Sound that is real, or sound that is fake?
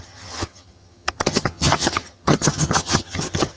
fake